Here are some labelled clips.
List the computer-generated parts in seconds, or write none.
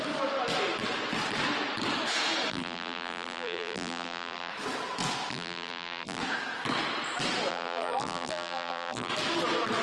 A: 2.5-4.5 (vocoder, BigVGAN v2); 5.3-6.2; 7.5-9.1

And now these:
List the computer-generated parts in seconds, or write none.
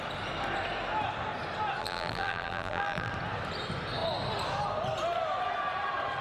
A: 1.8-3.1 (vocoder, BigVGAN v2)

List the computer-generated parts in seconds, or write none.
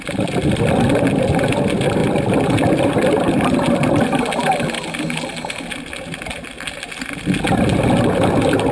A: 2.0-4.7 (vocoder, BigVGAN v2)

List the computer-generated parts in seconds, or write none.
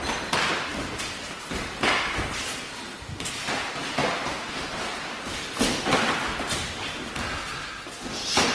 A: 0.7-2.2 (vocoder, BigVGAN v2); 4.0-6.2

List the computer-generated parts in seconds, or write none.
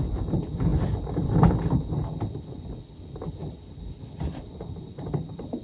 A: 3.4-5.6 (vocoder, BigVGAN v2)